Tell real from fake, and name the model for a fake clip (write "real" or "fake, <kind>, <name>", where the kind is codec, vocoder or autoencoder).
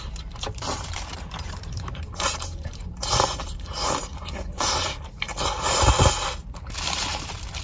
fake, vocoder, BigVGAN v2